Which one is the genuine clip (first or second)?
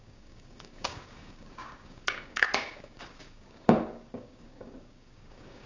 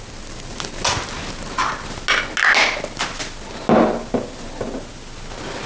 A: second